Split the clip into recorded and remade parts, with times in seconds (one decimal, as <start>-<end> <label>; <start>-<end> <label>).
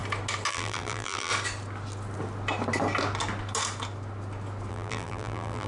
0.0-0.5 recorded; 0.5-1.3 remade; 1.3-4.7 recorded; 4.7-5.7 remade